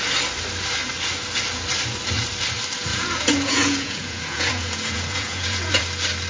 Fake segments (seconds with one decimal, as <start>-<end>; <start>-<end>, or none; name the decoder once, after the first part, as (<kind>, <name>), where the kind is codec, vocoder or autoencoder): 2.9-5.8 (vocoder, Vocos)